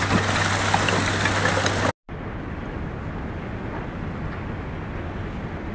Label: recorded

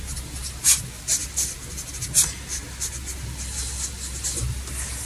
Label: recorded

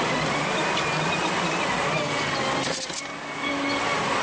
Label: recorded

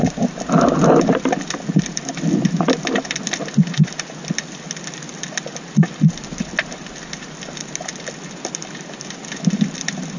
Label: recorded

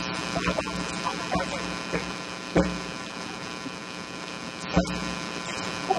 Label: recorded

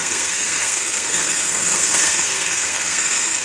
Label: remade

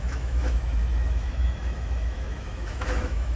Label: remade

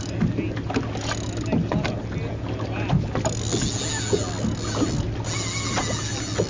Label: recorded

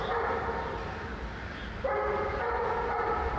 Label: recorded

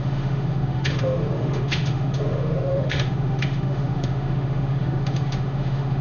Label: remade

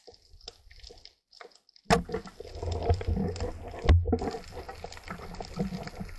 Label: recorded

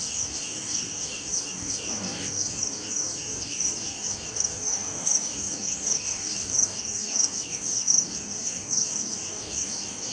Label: remade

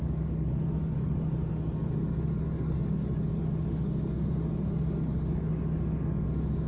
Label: remade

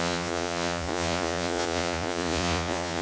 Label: remade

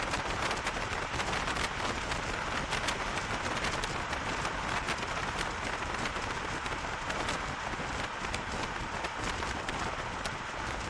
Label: recorded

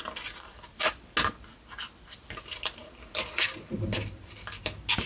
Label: recorded